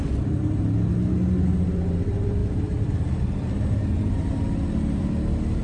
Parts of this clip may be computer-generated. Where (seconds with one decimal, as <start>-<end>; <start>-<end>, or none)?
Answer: none

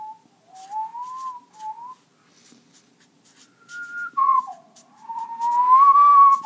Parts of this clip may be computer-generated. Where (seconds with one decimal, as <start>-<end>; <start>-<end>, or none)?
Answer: 4.2-5.3

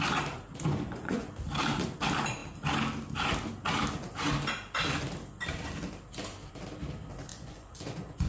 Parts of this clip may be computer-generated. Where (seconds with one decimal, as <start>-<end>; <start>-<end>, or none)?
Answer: 0.5-1.3; 7.3-8.3

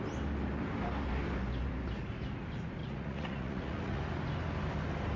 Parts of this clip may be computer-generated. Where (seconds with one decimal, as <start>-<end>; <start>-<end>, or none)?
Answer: 2.8-4.0